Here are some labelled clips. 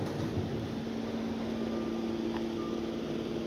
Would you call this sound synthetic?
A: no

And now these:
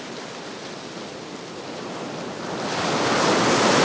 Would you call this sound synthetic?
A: no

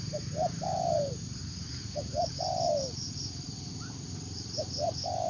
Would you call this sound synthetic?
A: yes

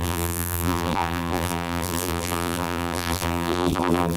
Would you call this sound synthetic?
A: yes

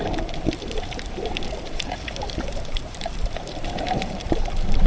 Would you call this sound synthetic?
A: yes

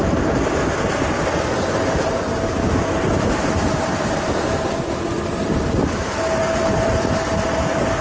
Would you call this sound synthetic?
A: yes